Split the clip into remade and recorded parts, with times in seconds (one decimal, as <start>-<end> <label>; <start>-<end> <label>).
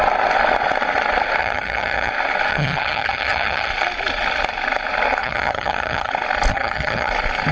0.0-1.4 recorded; 1.4-2.1 remade; 2.1-2.5 recorded; 2.5-3.7 remade; 3.7-5.2 recorded; 5.2-6.1 remade; 6.1-6.5 recorded; 6.5-7.1 remade; 7.1-7.5 recorded